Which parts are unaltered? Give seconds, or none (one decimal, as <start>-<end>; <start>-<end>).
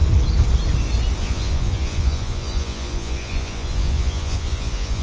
0.0-1.2